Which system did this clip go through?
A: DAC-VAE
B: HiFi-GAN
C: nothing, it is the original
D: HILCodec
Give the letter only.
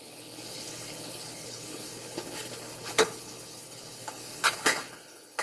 D